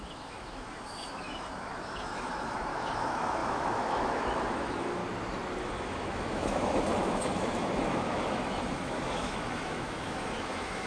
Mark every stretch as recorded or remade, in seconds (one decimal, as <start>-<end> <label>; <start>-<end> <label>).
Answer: 0.0-5.0 remade; 5.0-5.6 recorded; 5.6-10.9 remade